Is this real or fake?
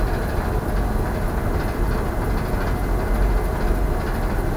real